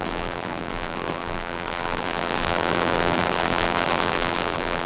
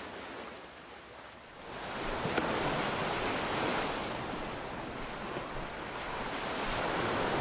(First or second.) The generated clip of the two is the first